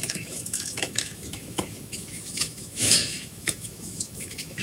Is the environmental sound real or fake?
fake